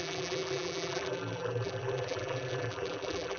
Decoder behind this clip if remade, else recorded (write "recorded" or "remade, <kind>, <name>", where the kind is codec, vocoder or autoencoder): remade, vocoder, BigVGAN v2